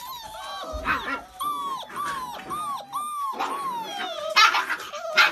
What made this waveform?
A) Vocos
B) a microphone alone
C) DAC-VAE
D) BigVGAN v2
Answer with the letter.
B